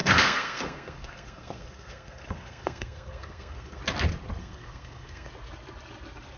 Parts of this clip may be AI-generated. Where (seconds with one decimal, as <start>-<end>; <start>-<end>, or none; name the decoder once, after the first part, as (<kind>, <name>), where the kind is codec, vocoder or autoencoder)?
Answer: 0.0-3.8 (codec, SNAC); 4.4-5.3